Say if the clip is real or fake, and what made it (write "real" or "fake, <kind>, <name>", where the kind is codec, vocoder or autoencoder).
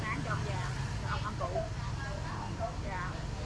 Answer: real